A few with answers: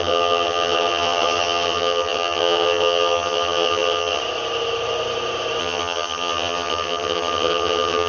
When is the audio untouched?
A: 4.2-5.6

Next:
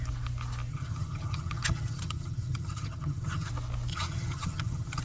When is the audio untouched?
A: 0.0-0.7; 3.5-3.9

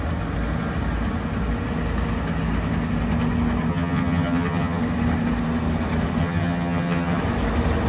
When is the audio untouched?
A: 0.0-3.7; 4.8-6.2; 7.2-7.9

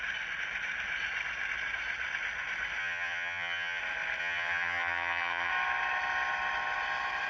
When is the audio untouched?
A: 0.0-2.8; 3.8-4.2; 5.5-7.3

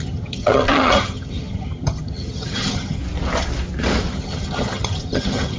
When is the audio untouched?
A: 3.0-4.1